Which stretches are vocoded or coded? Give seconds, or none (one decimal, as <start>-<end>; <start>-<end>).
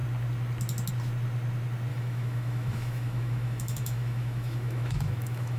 1.9-5.6